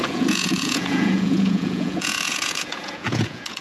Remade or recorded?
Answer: remade